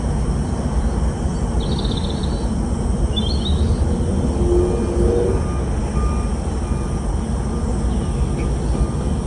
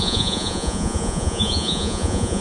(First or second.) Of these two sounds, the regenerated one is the second